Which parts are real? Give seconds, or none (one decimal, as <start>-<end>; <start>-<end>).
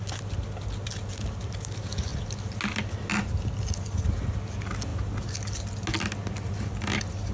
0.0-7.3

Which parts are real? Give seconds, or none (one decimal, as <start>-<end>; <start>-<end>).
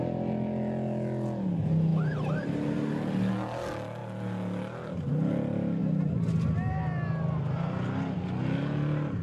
0.0-9.2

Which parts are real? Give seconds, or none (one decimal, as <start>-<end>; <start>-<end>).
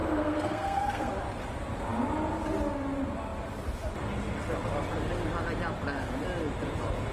1.1-7.1